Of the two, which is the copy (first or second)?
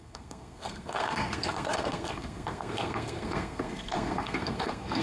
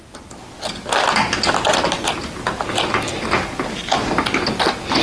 first